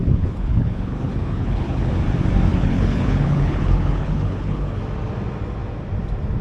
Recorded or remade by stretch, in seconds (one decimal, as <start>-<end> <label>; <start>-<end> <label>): 0.0-1.9 remade; 1.9-2.5 recorded; 2.5-4.8 remade; 4.8-6.4 recorded